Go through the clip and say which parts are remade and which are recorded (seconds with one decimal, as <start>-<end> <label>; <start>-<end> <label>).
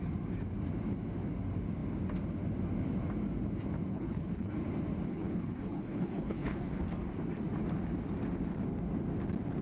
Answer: 0.0-3.9 recorded; 3.9-4.5 remade; 4.5-5.1 recorded; 5.1-6.8 remade; 6.8-9.6 recorded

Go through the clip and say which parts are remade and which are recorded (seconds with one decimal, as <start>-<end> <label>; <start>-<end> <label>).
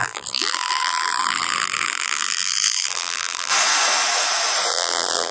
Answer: 0.0-3.5 remade; 3.5-4.7 recorded; 4.7-5.3 remade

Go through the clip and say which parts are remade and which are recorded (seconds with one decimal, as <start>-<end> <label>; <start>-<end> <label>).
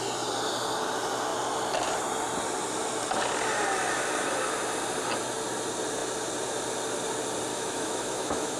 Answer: 0.0-7.5 recorded; 7.5-8.6 remade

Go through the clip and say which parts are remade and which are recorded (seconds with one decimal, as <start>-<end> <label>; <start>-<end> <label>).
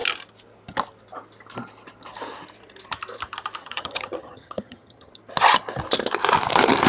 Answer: 0.0-3.6 recorded; 3.6-5.1 remade; 5.1-6.9 recorded